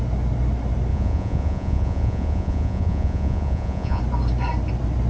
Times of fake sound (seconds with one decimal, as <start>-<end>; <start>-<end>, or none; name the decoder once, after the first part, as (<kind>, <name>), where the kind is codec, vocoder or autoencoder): 0.9-4.0 (vocoder, Vocos)